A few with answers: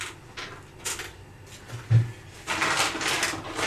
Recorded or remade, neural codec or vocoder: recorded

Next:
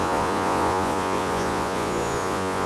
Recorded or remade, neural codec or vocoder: remade, vocoder, Vocos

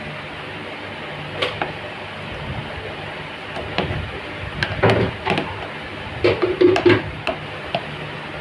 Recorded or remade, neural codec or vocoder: recorded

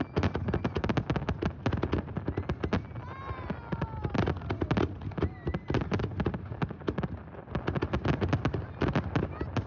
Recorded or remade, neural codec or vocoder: recorded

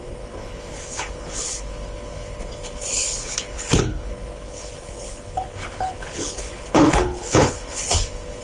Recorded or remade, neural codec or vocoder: remade, codec, HILCodec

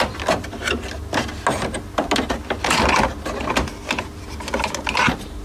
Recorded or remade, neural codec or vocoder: recorded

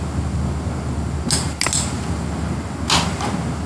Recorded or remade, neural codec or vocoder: recorded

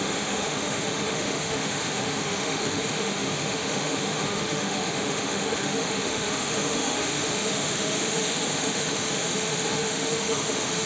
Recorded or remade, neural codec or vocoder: remade, autoencoder, DAC-VAE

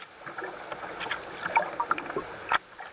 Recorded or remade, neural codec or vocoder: recorded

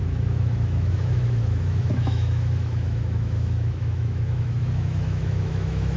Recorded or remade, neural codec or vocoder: remade, autoencoder, DAC-VAE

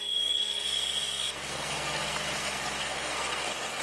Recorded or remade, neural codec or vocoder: remade, codec, SNAC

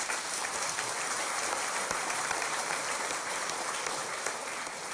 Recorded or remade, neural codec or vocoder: remade, vocoder, BigVGAN v2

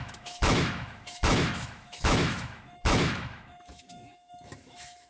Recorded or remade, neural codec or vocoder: remade, autoencoder, DAC-VAE